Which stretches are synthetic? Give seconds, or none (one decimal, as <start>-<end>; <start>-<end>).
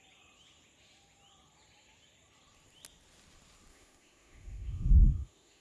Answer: 3.7-5.6